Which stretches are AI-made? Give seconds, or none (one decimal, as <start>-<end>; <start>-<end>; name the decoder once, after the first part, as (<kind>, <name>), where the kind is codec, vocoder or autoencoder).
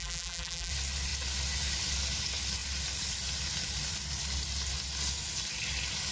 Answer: 0.0-0.7 (vocoder, BigVGAN v2)